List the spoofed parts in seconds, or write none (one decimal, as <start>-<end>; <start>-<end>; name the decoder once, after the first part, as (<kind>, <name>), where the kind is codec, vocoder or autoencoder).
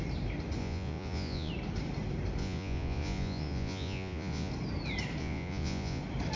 0.6-1.5 (vocoder, Vocos); 2.4-4.5; 5.2-6.0